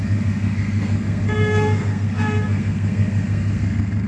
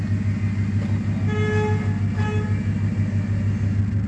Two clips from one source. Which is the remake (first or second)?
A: first